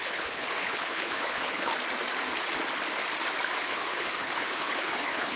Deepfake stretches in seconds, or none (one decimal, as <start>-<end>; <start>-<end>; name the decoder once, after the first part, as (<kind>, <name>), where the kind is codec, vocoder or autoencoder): 0.0-1.7 (codec, HILCodec); 3.6-5.4